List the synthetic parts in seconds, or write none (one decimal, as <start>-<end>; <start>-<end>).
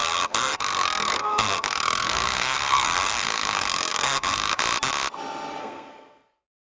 0.0-4.6; 5.6-6.7